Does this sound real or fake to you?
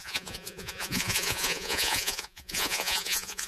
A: fake